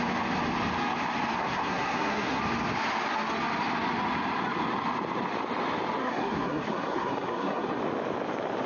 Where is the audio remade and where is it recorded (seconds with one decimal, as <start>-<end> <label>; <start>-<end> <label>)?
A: 0.0-1.4 recorded; 1.4-2.4 remade; 2.4-6.0 recorded; 6.0-7.8 remade; 7.8-8.7 recorded